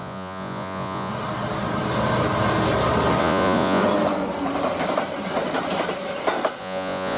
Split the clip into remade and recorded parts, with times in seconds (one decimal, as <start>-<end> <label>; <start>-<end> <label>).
0.0-1.1 remade; 1.1-3.2 recorded; 3.2-3.8 remade; 3.8-6.6 recorded; 6.6-7.2 remade